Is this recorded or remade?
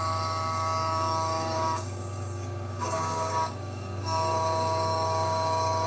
remade